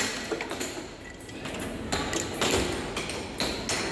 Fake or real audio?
real